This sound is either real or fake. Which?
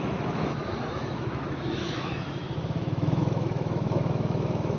fake